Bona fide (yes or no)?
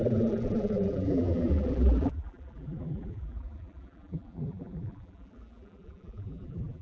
no